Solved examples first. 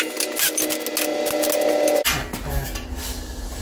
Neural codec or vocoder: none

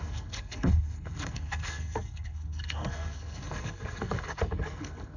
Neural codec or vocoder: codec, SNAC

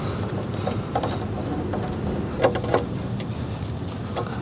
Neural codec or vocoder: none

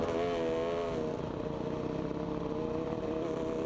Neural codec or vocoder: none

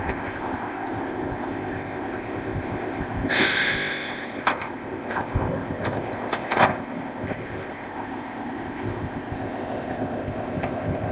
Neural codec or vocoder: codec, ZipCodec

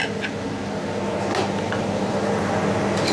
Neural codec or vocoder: none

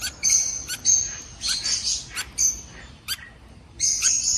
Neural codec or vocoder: none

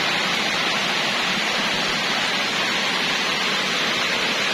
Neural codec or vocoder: none